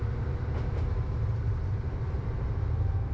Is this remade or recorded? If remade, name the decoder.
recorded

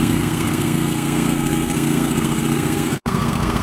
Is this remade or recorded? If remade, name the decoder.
remade, codec, SNAC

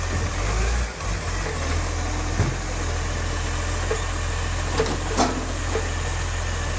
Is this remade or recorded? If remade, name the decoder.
recorded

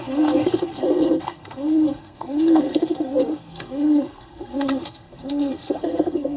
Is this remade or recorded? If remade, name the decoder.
remade, codec, SNAC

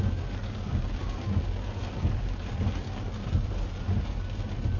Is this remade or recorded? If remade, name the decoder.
recorded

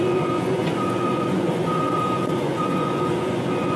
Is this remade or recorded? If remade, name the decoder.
remade, vocoder, Vocos